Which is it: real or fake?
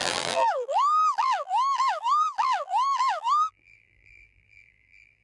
fake